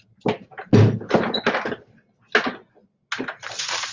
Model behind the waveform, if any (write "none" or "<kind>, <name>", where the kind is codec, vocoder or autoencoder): none